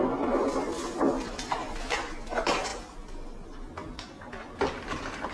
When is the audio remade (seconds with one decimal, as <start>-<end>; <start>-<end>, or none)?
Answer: none

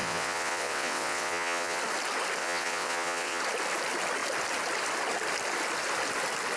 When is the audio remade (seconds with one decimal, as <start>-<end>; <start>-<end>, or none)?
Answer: 0.0-1.8; 2.4-3.4

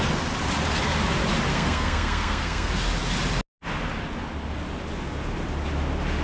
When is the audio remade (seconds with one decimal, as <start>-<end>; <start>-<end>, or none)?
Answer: 1.5-2.7

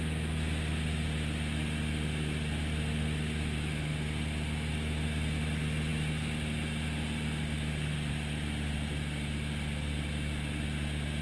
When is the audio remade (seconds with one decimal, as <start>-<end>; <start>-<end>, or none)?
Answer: none